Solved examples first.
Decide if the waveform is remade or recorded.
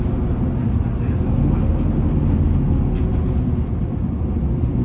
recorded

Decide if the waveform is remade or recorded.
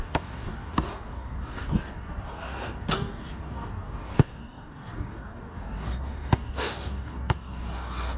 remade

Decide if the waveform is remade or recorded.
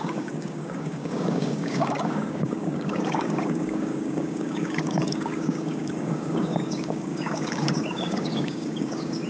remade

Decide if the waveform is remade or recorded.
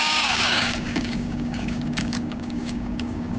remade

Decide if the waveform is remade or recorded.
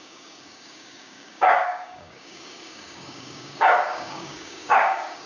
remade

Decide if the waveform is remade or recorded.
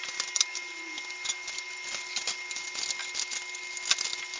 recorded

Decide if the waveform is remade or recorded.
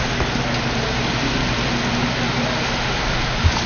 recorded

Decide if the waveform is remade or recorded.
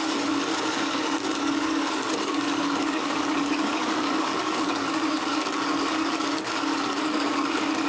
remade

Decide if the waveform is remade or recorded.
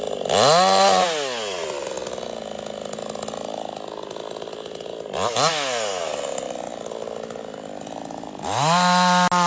recorded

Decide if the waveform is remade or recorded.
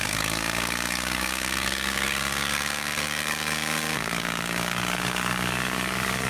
remade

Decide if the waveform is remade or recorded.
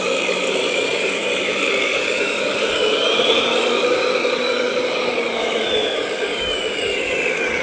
remade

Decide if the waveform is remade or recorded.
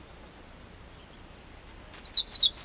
recorded